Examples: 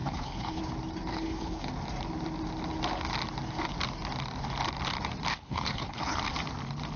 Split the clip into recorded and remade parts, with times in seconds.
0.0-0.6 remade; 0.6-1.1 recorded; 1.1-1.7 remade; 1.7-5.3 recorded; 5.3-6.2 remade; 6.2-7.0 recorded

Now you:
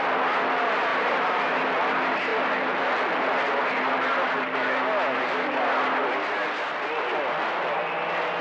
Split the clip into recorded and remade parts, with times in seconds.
0.0-0.9 recorded; 0.9-1.6 remade; 1.6-8.4 recorded

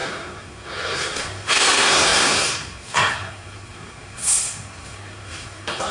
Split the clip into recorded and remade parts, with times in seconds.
0.0-5.9 remade

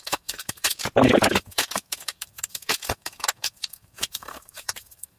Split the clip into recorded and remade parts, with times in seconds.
0.0-0.8 remade; 0.8-1.3 recorded; 1.3-5.2 remade